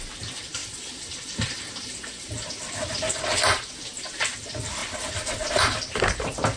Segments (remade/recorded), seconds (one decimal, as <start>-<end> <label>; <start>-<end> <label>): 0.0-0.6 recorded; 0.6-2.3 remade; 2.3-6.6 recorded